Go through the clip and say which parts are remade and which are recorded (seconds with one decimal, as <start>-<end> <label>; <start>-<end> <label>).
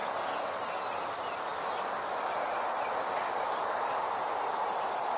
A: 0.0-0.5 remade; 0.5-5.2 recorded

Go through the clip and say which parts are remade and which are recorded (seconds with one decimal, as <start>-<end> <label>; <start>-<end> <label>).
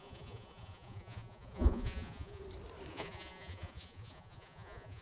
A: 0.0-2.4 remade; 2.4-2.9 recorded; 2.9-5.0 remade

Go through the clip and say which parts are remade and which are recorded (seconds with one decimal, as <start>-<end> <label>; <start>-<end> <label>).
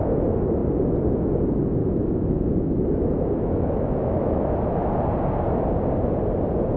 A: 0.0-1.8 recorded; 1.8-4.9 remade; 4.9-6.8 recorded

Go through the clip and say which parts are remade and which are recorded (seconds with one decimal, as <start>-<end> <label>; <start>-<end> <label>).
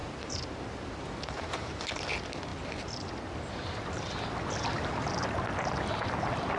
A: 0.0-1.8 remade; 1.8-6.6 recorded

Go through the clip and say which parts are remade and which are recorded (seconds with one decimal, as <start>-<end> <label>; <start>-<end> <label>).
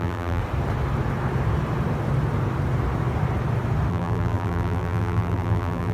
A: 0.0-0.4 remade; 0.4-3.9 recorded; 3.9-5.9 remade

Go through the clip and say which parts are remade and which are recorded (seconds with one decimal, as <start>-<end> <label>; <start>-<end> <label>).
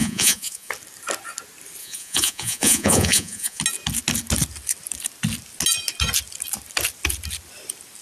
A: 0.0-0.7 remade; 0.7-1.8 recorded; 1.8-3.6 remade; 3.6-8.0 recorded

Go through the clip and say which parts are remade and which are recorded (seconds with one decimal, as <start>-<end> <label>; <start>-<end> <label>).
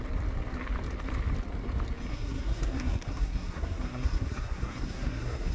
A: 0.0-2.1 recorded; 2.1-5.5 remade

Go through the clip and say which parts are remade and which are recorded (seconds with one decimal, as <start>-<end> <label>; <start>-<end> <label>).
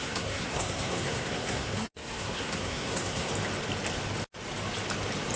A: 0.0-3.3 remade; 3.3-5.4 recorded